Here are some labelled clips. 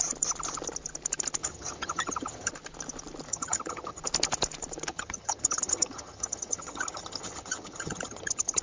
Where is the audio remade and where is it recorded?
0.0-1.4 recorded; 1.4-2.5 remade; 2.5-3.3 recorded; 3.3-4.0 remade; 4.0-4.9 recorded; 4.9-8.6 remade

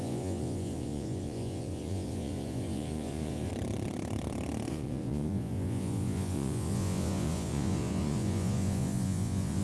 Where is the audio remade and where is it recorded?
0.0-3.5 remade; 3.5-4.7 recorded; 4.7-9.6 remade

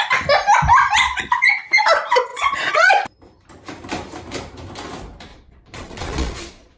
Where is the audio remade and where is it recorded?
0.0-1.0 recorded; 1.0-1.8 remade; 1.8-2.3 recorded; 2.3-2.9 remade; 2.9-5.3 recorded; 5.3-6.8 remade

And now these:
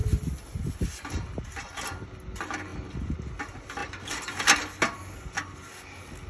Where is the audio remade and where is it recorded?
0.0-3.8 recorded; 3.8-4.4 remade; 4.4-6.3 recorded

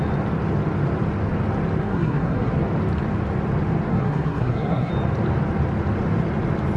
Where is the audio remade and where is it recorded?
0.0-1.8 recorded; 1.8-2.5 remade; 2.5-3.9 recorded; 3.9-4.9 remade; 4.9-6.8 recorded